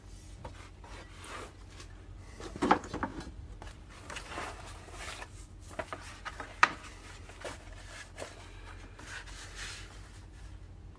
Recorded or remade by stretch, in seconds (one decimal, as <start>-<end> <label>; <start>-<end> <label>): 0.0-11.0 recorded